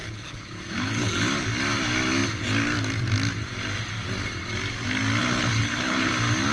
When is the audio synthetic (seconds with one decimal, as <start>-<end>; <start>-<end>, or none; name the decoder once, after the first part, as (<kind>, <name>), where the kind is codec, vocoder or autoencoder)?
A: 0.0-1.1 (codec, HILCodec); 5.2-6.1